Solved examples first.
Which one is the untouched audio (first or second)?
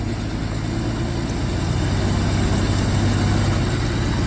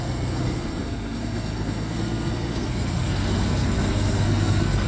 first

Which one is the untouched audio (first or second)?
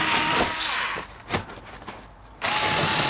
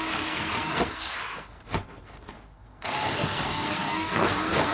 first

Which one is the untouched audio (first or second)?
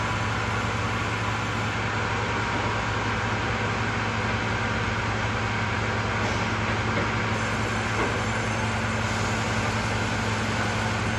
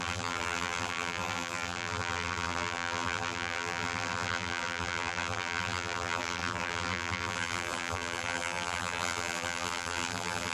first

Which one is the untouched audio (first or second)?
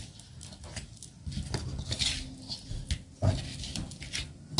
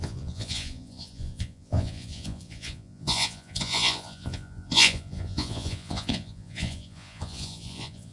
first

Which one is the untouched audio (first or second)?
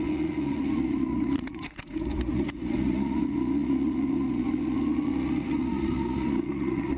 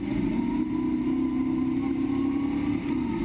second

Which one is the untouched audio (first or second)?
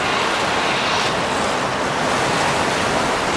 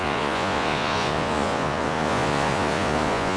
first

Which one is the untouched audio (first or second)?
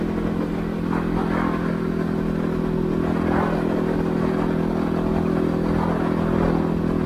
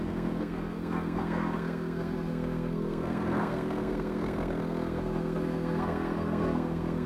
first